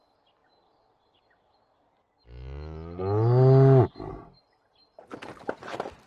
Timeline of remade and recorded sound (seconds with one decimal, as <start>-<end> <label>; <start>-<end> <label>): 0.0-6.1 recorded